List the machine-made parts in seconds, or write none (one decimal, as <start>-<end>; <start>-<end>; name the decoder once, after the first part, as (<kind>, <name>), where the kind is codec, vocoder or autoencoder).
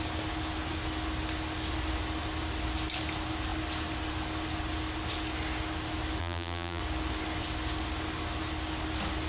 6.2-6.8 (vocoder, BigVGAN v2)